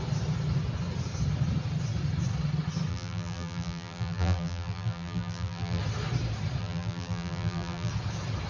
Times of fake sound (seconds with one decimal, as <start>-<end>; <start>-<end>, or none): 2.9-5.8; 6.6-7.9